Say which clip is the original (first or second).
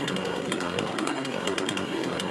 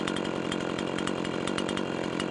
second